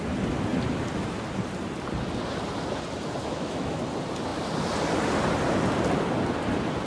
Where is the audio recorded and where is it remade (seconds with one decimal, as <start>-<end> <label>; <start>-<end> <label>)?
0.0-3.2 recorded; 3.2-3.8 remade; 3.8-6.9 recorded